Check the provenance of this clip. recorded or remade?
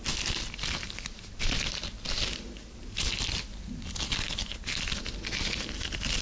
recorded